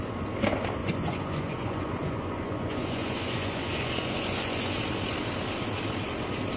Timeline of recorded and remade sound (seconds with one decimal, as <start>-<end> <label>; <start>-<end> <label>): 0.0-0.8 recorded; 0.8-4.8 remade; 4.8-6.6 recorded